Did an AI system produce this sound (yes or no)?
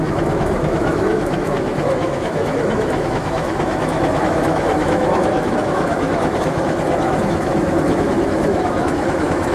yes